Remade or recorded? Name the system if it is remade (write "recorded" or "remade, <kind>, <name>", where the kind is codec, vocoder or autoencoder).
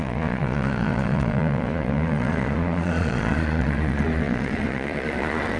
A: remade, vocoder, Vocos